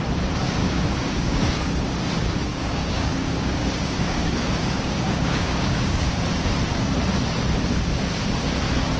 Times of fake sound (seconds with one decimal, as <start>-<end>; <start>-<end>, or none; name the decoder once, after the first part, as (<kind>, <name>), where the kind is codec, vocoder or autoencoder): 0.6-1.8 (codec, DAC); 2.5-6.1